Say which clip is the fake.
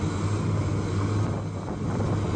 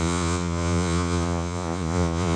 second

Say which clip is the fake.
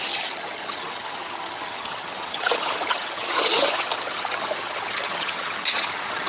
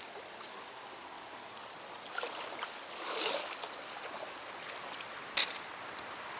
first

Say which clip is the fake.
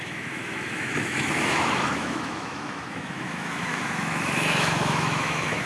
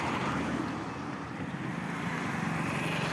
first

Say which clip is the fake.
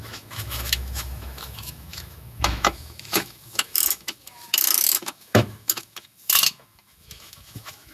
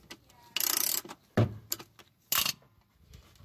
first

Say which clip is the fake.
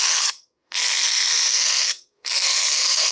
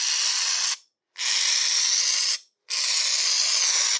first